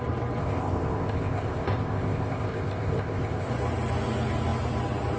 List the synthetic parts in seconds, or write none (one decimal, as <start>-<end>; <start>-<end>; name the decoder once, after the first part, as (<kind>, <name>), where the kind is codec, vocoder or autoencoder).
0.4-3.5 (codec, ZipCodec)